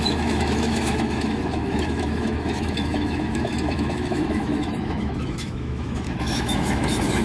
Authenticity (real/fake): fake